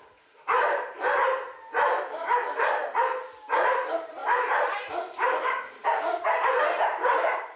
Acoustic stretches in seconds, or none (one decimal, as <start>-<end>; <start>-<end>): 2.8-3.5